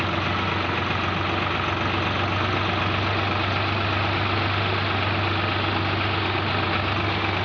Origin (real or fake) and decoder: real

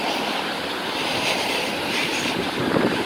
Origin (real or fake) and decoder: fake, vocoder, BigVGAN v2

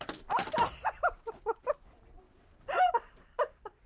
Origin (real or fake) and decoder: real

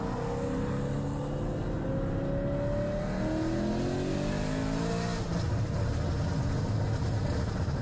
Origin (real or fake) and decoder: real